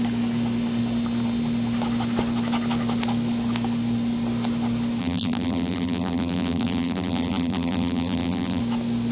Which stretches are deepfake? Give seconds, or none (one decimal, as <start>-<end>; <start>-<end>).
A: 5.0-8.6